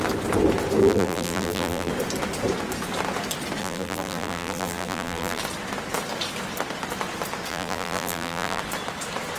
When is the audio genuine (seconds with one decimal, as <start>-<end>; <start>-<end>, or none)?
0.0-0.8; 1.9-3.6; 5.4-7.5; 8.6-9.4